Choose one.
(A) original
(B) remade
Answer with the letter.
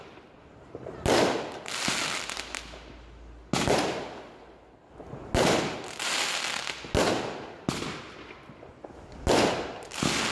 A